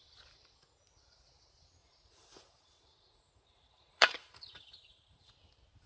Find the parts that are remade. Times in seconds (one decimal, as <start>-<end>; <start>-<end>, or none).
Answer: 1.8-5.3